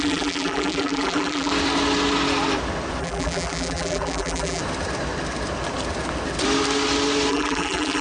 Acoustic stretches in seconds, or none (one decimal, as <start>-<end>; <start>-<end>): 1.5-3.0; 4.6-7.3